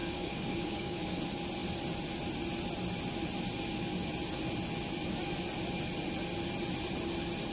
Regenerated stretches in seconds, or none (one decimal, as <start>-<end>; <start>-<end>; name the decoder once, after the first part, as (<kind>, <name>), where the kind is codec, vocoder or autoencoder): 0.0-1.2 (codec, DAC)